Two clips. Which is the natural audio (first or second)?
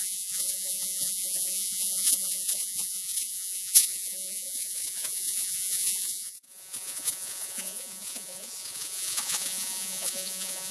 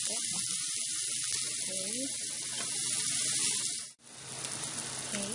second